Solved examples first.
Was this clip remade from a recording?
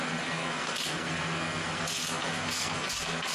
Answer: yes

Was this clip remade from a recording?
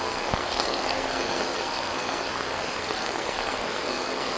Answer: yes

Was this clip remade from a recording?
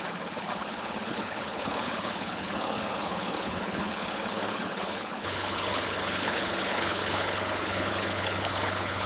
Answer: yes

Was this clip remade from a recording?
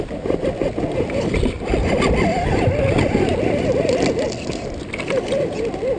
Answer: no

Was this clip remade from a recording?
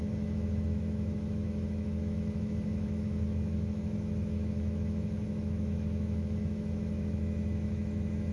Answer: yes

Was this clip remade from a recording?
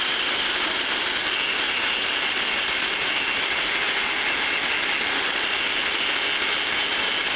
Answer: no